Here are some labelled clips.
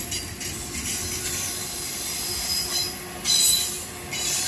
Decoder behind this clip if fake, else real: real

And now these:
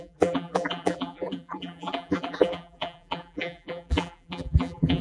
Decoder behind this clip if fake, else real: fake, vocoder, BigVGAN v2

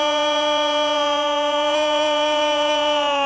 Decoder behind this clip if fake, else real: fake, vocoder, Vocos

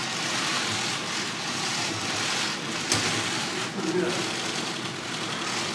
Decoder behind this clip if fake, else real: real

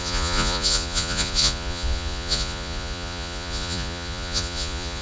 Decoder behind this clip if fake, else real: fake, vocoder, Vocos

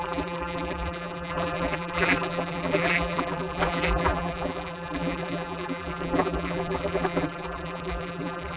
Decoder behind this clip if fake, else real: fake, vocoder, BigVGAN v2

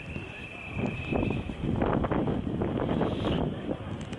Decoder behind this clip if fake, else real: real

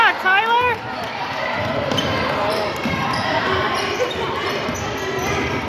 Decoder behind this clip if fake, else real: fake, vocoder, BigVGAN v2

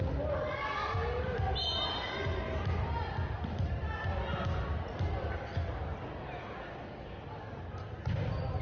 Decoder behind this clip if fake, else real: real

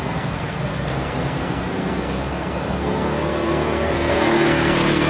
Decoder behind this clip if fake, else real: fake, codec, SNAC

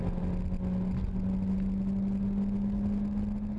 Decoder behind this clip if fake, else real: real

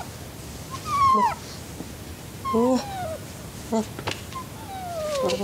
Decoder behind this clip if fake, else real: real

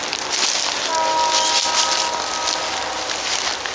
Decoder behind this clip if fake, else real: real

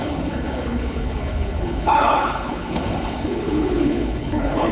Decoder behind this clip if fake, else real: fake, codec, HILCodec